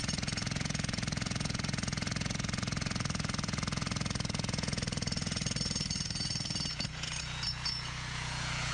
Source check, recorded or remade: remade